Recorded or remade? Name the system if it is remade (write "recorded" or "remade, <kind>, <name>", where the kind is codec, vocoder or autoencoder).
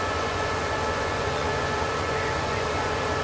remade, vocoder, Vocos